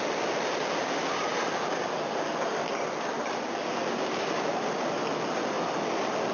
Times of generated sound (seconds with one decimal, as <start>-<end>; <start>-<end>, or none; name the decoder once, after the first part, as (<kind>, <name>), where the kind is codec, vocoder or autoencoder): 0.0-1.0 (vocoder, BigVGAN v2); 3.7-6.3